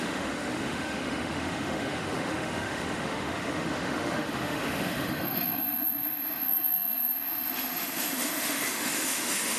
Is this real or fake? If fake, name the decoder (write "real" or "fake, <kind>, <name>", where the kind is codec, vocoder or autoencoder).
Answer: fake, autoencoder, DAC-VAE